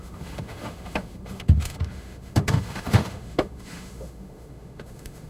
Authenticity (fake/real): fake